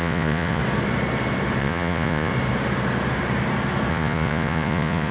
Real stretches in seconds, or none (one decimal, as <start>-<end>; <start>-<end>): 0.6-1.6; 2.3-3.9